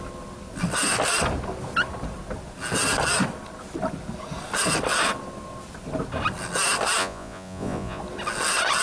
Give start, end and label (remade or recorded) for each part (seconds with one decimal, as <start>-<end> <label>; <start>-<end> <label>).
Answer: 0.0-7.0 recorded; 7.0-8.0 remade; 8.0-8.8 recorded